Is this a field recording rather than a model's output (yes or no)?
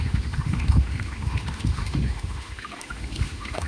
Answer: no